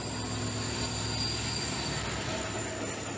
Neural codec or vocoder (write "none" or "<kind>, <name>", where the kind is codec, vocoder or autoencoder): none